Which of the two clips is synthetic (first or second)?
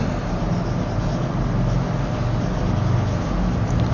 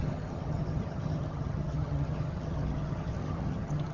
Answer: second